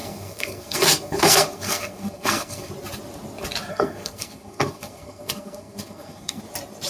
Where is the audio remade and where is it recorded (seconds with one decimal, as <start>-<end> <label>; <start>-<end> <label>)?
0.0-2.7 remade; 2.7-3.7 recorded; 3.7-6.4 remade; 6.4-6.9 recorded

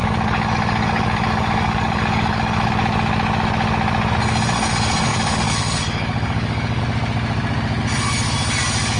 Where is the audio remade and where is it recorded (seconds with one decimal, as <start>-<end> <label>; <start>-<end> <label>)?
0.0-2.7 remade; 2.7-5.1 recorded; 5.1-6.8 remade; 6.8-9.0 recorded

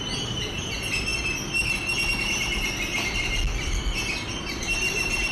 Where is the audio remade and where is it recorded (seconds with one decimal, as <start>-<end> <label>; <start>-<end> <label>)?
0.0-5.3 recorded

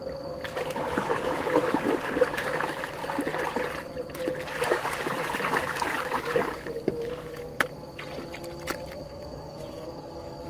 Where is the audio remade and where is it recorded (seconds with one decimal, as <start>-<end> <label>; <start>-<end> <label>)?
0.0-3.0 remade; 3.0-4.5 recorded; 4.5-7.5 remade; 7.5-9.0 recorded; 9.0-10.5 remade

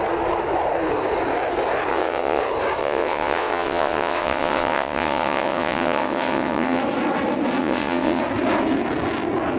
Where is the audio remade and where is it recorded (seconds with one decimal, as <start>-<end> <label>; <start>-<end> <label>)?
0.0-1.9 recorded; 1.9-2.4 remade; 2.4-2.8 recorded; 2.8-6.8 remade; 6.8-7.6 recorded; 7.6-8.2 remade; 8.2-9.6 recorded